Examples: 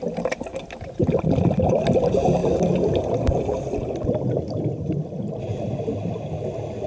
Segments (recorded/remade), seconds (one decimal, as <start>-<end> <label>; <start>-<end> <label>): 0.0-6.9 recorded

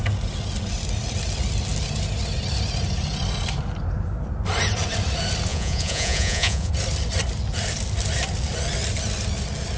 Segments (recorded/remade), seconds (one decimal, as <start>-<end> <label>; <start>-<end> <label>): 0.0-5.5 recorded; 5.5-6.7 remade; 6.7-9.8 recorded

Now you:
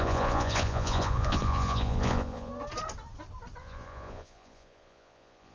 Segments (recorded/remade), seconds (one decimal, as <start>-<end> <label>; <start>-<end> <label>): 0.0-2.5 remade; 2.5-3.6 recorded; 3.6-5.5 remade

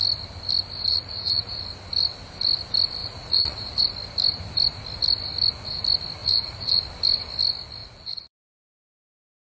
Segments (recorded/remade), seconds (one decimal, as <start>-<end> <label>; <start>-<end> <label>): 0.0-0.9 recorded; 0.9-1.6 remade; 1.6-3.0 recorded; 3.0-3.8 remade; 3.8-6.2 recorded; 6.2-6.8 remade; 6.8-7.8 recorded; 7.8-8.5 remade; 8.5-9.6 recorded

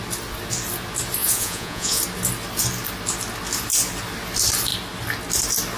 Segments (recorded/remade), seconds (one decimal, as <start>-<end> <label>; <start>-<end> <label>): 0.0-1.2 recorded; 1.2-2.0 remade; 2.0-5.8 recorded

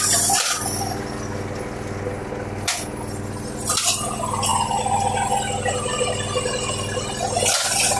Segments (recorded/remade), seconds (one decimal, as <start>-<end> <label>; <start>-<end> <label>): 0.0-8.0 recorded

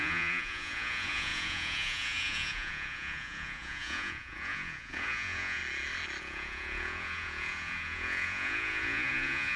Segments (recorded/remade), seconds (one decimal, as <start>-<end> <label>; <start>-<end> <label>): 0.0-5.6 remade; 5.6-6.2 recorded; 6.2-9.6 remade